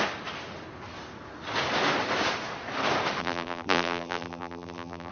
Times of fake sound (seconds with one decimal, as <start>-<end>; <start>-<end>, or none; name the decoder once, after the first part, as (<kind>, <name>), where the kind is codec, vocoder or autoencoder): 3.2-5.1 (vocoder, BigVGAN v2)